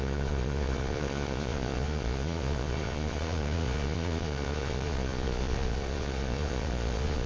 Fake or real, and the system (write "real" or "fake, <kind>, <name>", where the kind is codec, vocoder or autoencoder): fake, vocoder, Vocos